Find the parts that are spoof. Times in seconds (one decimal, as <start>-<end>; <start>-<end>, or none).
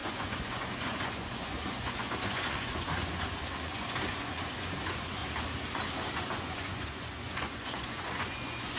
0.0-5.2; 6.0-8.8